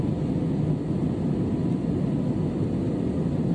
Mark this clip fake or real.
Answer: real